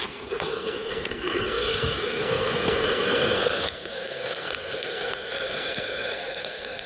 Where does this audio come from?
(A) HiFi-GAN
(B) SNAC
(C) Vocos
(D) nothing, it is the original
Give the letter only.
B